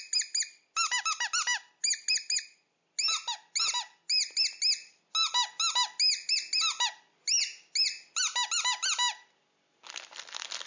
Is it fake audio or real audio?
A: real